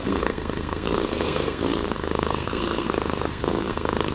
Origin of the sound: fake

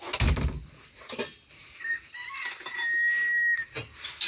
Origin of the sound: real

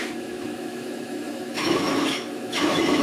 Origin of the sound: fake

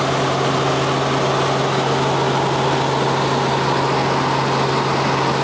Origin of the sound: real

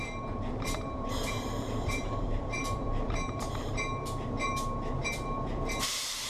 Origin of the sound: fake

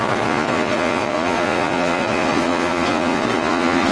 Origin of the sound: fake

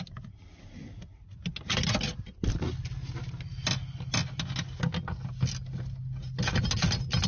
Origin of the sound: real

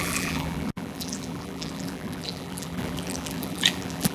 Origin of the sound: fake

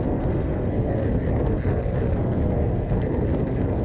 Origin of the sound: fake